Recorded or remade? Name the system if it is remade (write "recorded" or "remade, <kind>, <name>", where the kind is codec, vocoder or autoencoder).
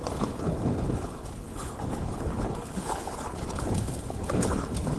remade, codec, HILCodec